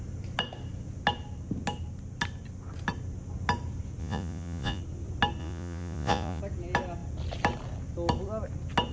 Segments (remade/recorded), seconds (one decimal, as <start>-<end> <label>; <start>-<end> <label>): 0.0-4.0 recorded; 4.0-4.8 remade; 4.8-5.4 recorded; 5.4-6.4 remade; 6.4-8.9 recorded